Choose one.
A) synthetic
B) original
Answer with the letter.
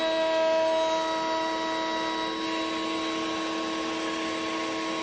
B